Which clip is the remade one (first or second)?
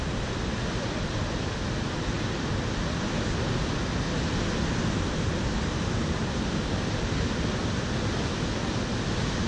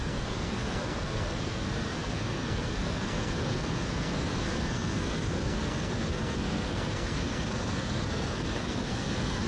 second